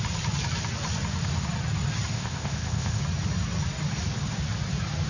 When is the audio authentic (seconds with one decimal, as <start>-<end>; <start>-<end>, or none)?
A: 0.0-2.1; 3.0-5.1